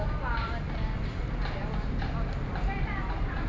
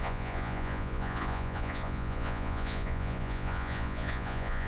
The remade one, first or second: second